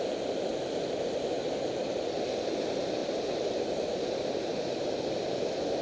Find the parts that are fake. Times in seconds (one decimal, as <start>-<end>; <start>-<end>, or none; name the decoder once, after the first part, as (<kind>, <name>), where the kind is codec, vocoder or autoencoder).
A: none